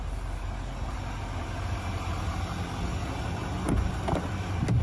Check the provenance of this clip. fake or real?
real